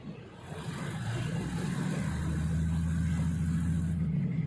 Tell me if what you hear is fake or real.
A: real